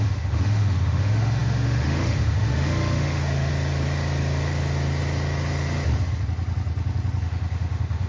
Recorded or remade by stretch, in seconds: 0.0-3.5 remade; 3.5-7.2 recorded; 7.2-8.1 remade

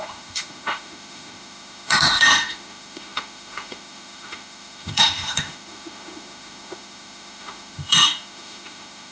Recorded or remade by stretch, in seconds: 0.0-9.1 remade

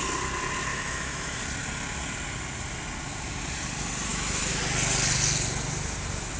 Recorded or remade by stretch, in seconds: 0.0-0.7 recorded; 0.7-1.4 remade; 1.4-4.1 recorded; 4.1-4.6 remade; 4.6-6.4 recorded